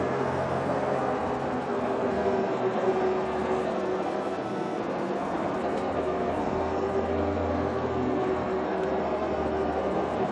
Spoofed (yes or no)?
yes